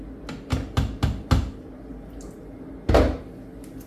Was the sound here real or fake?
real